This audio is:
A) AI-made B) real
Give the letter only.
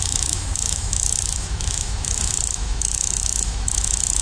A